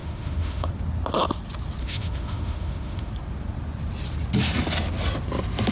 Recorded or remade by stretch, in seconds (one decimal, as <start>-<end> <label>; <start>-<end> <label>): 0.0-0.7 remade; 0.7-1.8 recorded; 1.8-3.1 remade; 3.1-5.7 recorded